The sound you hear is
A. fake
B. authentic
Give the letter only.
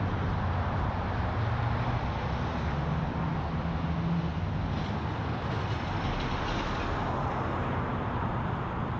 B